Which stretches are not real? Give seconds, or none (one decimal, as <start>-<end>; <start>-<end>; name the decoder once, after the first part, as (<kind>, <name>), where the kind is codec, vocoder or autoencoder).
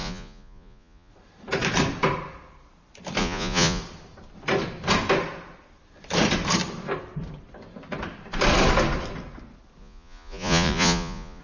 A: 0.0-1.1 (vocoder, Vocos); 3.2-3.8; 9.8-11.4